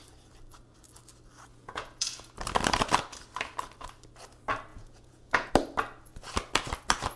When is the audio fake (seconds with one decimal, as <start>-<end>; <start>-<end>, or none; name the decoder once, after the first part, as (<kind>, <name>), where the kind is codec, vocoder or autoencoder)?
1.5-2.3 (vocoder, Vocos); 4.7-5.5